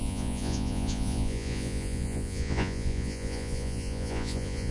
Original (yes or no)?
no